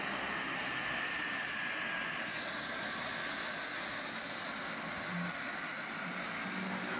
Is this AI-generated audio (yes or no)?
no